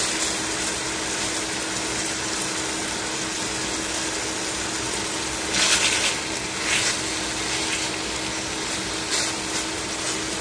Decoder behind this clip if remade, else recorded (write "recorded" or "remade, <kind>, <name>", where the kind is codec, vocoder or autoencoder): recorded